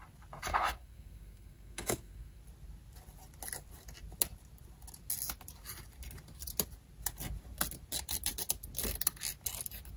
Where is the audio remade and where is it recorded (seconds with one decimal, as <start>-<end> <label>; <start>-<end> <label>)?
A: 0.0-0.5 recorded; 0.5-2.4 remade; 2.4-10.0 recorded